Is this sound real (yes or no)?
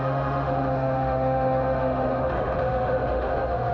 no